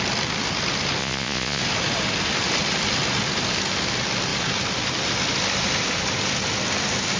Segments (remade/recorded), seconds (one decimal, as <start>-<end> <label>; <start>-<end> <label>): 0.0-1.0 recorded; 1.0-1.6 remade; 1.6-7.2 recorded

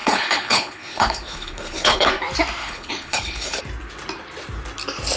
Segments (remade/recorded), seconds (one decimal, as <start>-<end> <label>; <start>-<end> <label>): 0.0-2.1 remade; 2.1-2.6 recorded; 2.6-3.6 remade; 3.6-5.2 recorded

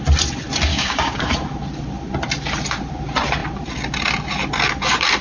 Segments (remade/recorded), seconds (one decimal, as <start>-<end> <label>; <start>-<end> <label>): 0.0-0.7 recorded; 0.7-1.3 remade; 1.3-5.2 recorded

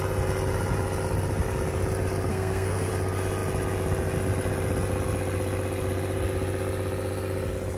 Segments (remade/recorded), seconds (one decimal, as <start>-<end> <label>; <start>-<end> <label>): 0.0-2.3 recorded; 2.3-2.9 remade; 2.9-7.8 recorded

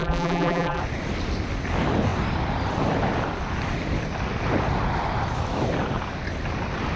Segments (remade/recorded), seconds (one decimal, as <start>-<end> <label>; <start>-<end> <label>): 0.0-0.8 remade; 0.8-7.0 recorded

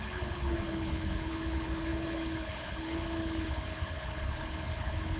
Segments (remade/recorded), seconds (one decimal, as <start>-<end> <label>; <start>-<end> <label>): 0.0-5.2 remade

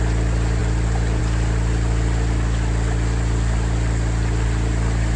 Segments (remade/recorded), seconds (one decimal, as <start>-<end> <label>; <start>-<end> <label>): 0.0-5.2 recorded

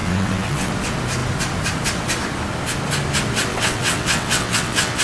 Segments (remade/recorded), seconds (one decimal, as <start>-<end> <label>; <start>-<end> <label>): 0.0-0.7 remade; 0.7-3.5 recorded; 3.5-5.0 remade